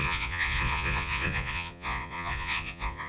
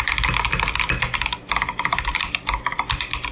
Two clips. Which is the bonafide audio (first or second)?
second